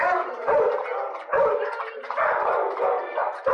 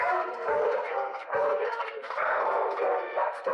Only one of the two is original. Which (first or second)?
first